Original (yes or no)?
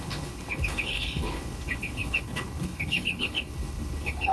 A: no